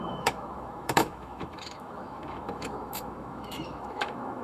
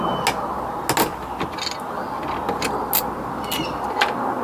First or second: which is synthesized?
first